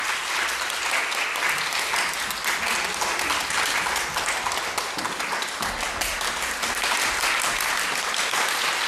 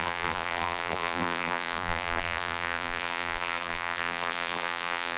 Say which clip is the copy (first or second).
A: second